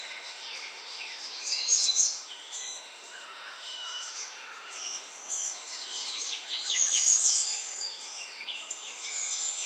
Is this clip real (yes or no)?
no